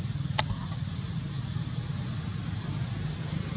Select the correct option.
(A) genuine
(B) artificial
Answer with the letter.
A